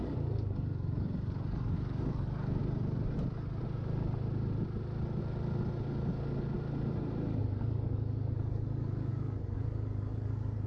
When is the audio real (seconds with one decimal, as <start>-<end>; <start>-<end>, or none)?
2.6-7.4